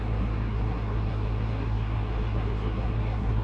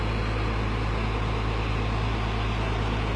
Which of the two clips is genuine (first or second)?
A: second